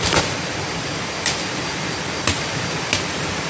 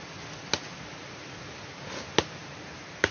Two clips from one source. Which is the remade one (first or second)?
first